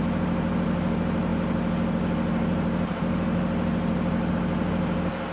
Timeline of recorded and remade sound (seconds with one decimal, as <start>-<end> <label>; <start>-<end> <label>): 0.0-5.3 recorded